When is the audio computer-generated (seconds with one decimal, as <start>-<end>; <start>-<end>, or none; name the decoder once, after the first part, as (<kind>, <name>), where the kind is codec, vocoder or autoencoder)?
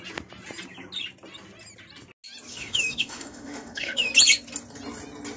2.5-4.1 (autoencoder, DAC-VAE)